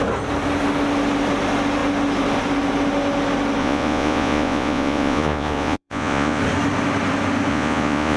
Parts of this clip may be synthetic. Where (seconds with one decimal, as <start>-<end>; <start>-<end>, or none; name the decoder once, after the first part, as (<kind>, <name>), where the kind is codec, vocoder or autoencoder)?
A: 3.6-6.4 (vocoder, Vocos); 7.5-8.2